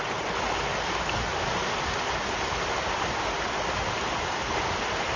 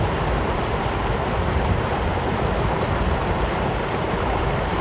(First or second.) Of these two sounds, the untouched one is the first